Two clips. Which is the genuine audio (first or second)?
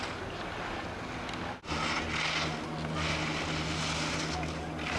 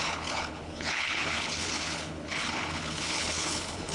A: first